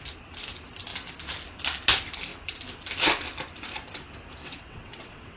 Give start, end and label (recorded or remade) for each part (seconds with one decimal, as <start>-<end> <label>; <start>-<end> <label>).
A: 0.0-4.4 recorded; 4.4-5.4 remade